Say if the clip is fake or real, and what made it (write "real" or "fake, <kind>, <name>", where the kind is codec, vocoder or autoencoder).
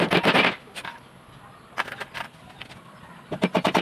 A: real